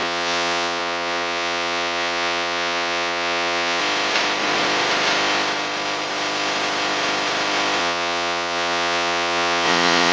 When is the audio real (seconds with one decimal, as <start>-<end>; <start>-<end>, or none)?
3.8-7.8